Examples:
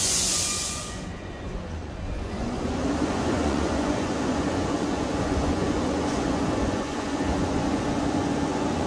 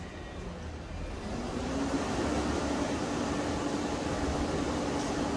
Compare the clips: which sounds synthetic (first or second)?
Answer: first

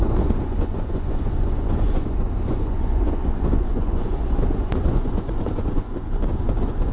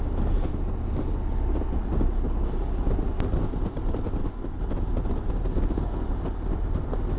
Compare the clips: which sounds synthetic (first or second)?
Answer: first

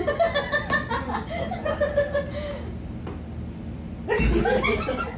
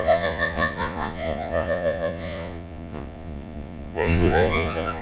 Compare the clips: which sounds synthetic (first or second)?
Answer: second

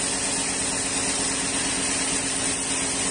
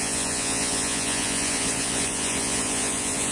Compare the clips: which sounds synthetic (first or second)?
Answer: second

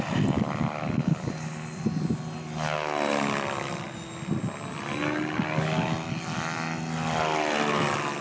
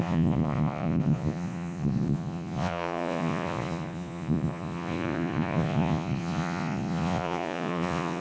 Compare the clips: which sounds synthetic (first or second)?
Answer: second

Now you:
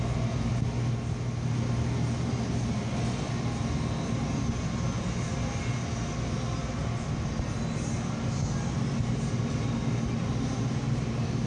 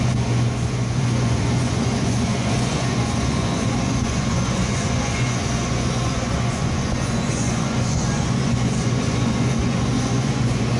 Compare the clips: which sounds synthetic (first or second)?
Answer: second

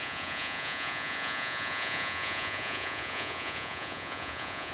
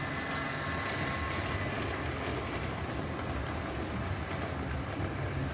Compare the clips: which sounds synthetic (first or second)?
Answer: first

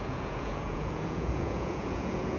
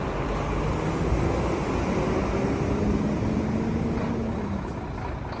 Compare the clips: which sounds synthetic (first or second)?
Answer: first